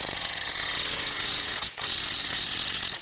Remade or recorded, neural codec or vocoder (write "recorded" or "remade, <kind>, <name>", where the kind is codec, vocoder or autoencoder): remade, vocoder, WaveNeXt